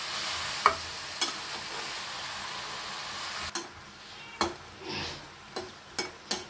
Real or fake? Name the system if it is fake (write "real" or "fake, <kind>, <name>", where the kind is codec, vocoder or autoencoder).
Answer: real